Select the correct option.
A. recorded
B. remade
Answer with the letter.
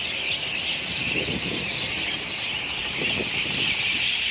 A